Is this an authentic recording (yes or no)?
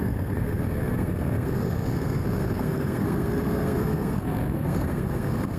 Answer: no